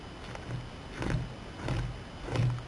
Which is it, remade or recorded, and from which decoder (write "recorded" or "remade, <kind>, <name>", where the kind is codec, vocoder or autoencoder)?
recorded